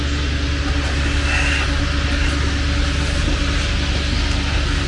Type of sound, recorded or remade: recorded